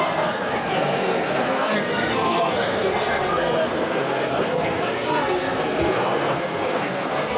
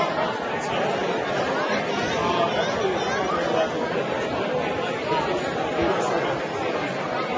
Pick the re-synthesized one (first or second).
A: first